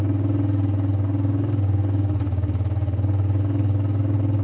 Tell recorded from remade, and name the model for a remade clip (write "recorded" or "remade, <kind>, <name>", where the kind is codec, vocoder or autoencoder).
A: remade, codec, DAC